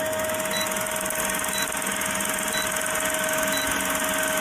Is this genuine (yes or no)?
yes